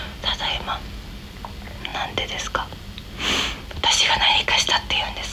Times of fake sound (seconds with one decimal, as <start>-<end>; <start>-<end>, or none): none